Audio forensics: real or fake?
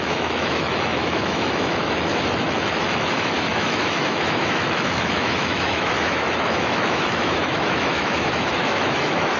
fake